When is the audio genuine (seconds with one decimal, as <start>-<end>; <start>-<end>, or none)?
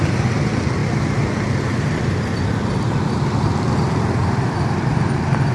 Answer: 0.0-5.5